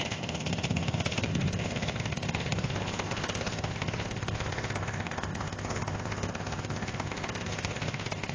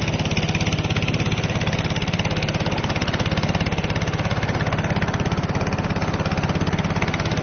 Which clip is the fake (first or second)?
first